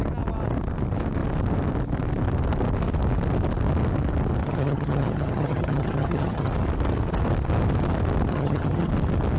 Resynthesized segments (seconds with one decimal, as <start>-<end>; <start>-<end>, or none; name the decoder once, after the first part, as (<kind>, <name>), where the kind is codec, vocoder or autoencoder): 4.4-6.5 (vocoder, HiFi-GAN); 8.3-8.9